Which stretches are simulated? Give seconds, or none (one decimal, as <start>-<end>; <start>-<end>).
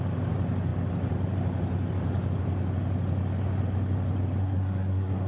4.4-5.3